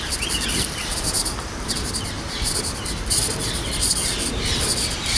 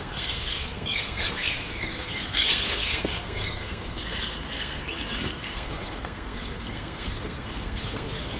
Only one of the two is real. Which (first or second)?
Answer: first